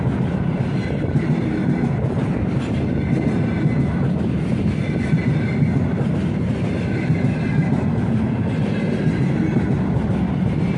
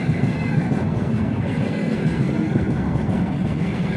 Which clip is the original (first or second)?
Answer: first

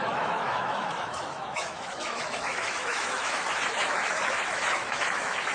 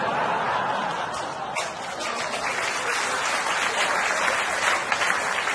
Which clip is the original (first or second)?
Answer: second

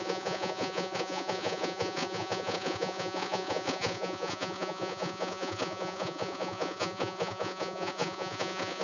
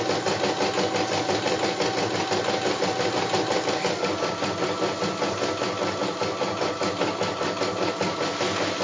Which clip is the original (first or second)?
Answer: second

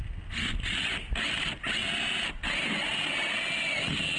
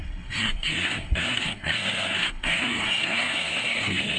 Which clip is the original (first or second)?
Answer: first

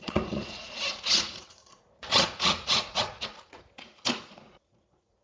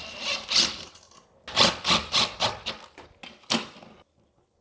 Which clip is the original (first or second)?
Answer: second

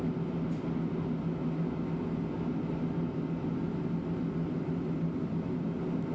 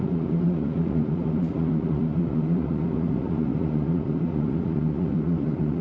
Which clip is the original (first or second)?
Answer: first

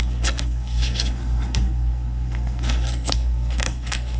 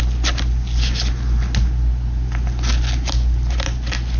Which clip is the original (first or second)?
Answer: second